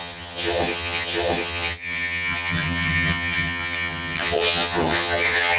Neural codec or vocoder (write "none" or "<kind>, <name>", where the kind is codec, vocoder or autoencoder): vocoder, HiFi-GAN